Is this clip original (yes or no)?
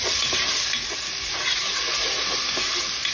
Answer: yes